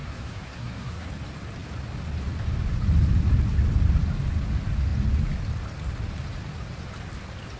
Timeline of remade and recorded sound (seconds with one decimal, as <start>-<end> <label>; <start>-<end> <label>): 0.0-1.1 remade; 1.1-7.6 recorded